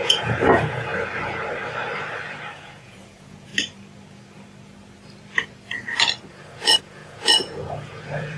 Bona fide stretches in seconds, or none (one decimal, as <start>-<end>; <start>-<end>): 0.9-2.5; 3.5-6.3